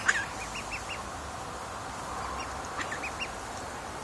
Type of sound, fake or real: real